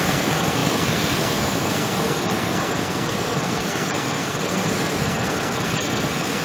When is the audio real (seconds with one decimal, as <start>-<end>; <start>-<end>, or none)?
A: none